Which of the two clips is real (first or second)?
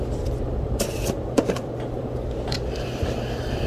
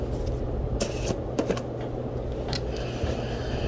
second